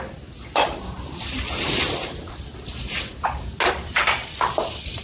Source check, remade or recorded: recorded